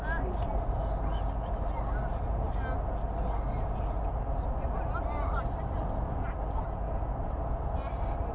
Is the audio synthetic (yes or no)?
no